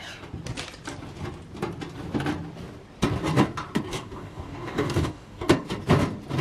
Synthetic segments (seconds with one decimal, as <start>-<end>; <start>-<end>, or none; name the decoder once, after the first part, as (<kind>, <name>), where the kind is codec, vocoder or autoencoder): 3.9-5.5 (codec, DAC)